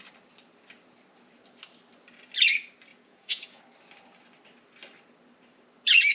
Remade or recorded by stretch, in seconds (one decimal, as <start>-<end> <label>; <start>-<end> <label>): 0.0-2.9 recorded; 2.9-3.6 remade; 3.6-6.1 recorded